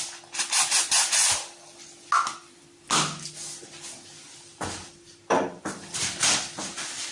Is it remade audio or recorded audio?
recorded